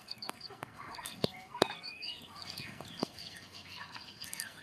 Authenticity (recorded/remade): remade